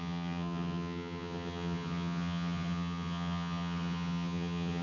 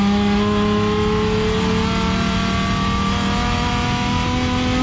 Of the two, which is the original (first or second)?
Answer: second